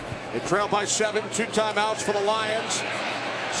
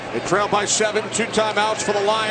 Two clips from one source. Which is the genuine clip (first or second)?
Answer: second